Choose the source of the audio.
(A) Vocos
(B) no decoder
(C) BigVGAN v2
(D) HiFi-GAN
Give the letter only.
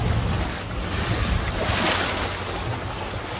B